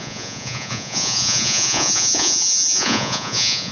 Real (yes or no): no